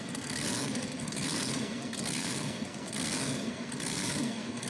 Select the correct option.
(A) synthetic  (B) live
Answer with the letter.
A